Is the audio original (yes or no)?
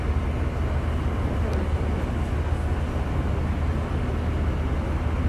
yes